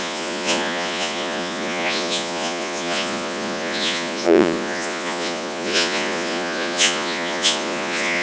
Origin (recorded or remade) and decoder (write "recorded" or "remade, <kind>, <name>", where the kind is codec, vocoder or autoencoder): remade, vocoder, Vocos